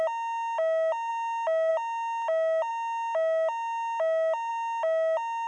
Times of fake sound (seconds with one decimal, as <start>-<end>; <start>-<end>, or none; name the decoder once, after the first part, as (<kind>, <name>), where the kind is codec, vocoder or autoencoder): none